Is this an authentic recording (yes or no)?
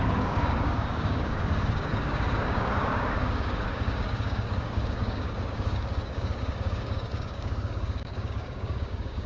no